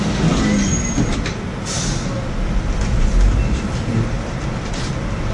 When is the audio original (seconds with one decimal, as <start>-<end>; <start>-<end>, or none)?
0.0-5.3